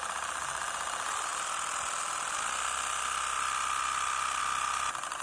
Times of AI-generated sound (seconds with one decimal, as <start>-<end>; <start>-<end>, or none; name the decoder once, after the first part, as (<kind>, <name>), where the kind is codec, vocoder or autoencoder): none